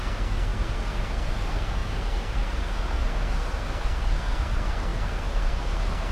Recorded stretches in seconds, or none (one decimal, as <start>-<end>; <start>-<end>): none